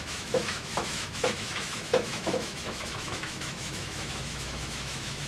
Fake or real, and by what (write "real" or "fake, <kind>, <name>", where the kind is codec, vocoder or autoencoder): fake, autoencoder, DAC-VAE